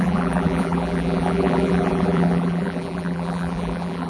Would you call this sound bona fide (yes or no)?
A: no